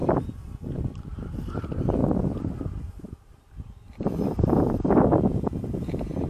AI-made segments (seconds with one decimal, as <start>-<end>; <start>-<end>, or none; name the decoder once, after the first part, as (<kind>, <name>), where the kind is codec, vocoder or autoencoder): 0.0-1.3 (vocoder, BigVGAN v2); 2.0-5.3